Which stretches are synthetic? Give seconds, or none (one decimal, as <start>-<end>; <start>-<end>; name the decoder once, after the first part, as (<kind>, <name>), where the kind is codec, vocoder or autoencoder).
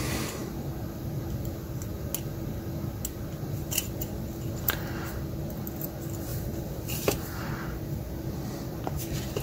6.3-8.8 (vocoder, BigVGAN v2)